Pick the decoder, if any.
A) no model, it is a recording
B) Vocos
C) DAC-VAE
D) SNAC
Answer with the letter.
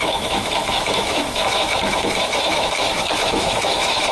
C